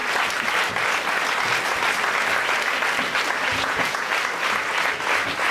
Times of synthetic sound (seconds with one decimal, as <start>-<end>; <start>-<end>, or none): 3.5-4.1